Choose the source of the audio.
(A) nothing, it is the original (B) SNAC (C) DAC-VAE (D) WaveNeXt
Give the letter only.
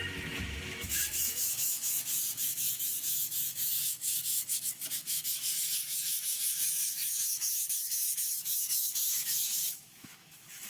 C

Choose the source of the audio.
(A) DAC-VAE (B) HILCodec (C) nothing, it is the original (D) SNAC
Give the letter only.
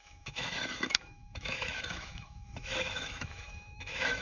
A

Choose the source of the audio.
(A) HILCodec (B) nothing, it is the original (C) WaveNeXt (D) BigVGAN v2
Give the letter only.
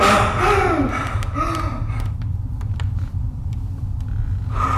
B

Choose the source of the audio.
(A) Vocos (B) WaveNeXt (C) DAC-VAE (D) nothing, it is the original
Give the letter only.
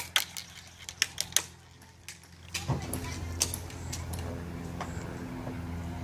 D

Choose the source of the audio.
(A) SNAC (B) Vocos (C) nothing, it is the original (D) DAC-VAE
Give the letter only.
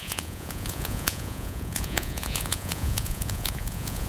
B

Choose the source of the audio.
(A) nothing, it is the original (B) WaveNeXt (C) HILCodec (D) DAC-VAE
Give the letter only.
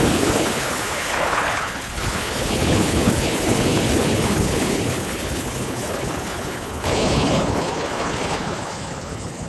C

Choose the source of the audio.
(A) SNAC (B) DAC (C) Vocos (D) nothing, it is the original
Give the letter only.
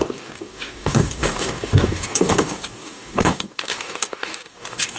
B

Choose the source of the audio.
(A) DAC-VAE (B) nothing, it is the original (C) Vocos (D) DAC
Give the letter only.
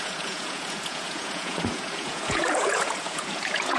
C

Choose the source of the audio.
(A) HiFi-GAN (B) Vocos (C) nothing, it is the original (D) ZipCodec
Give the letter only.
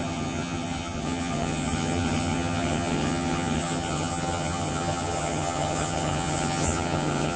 A